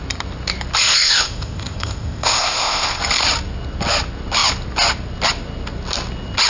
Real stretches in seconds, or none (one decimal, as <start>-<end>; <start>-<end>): 0.0-0.8; 3.0-6.5